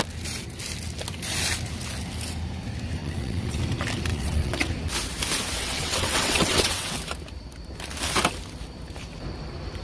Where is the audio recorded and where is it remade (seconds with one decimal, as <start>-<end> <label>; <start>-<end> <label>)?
0.0-3.0 recorded; 3.0-3.6 remade; 3.6-4.1 recorded; 4.1-4.7 remade; 4.7-5.6 recorded; 5.6-7.0 remade; 7.0-9.8 recorded